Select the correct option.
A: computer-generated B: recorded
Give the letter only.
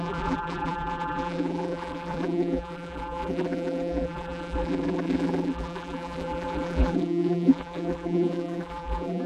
A